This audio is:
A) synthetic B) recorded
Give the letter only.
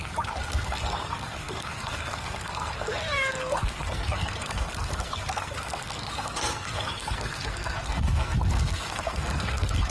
A